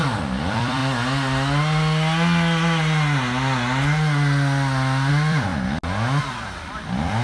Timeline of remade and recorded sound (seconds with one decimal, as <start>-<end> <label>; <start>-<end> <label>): 0.0-0.8 remade; 0.8-5.1 recorded; 5.1-5.5 remade; 5.5-6.2 recorded; 6.2-7.2 remade